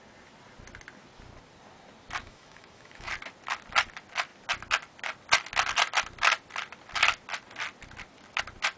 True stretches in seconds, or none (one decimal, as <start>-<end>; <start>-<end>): 0.0-2.2; 3.1-8.8